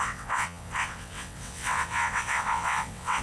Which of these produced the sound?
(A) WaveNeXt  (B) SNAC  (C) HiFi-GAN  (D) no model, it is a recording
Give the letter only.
A